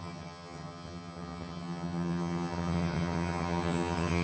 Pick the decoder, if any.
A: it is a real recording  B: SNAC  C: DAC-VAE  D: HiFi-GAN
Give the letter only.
D